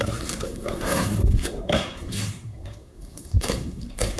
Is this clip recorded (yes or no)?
no